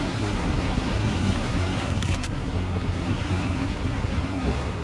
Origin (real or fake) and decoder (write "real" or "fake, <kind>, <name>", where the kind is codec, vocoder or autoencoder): fake, codec, SNAC